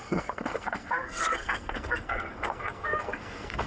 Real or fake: fake